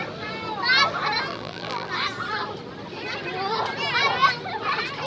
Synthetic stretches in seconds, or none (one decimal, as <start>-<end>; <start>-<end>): 1.3-1.9